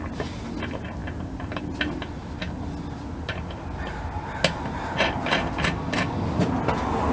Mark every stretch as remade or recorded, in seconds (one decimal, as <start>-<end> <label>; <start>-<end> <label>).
0.0-7.1 recorded